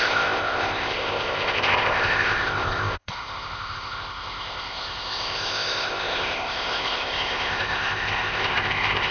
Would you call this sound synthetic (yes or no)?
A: yes